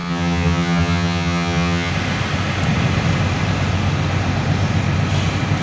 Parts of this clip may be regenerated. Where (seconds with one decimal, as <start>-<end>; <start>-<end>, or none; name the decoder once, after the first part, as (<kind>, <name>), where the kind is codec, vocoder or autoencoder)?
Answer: 0.0-1.9 (vocoder, HiFi-GAN)